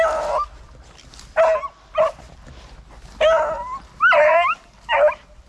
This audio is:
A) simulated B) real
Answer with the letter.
B